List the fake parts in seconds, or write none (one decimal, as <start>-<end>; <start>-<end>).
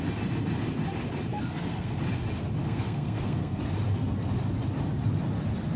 1.3-1.9; 2.6-3.6